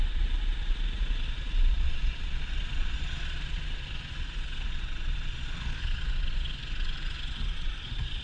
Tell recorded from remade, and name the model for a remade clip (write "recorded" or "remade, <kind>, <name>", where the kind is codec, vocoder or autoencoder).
remade, vocoder, Vocos